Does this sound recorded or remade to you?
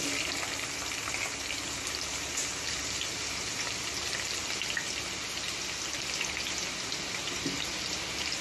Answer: recorded